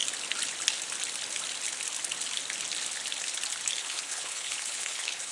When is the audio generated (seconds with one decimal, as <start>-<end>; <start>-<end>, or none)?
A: 3.8-5.3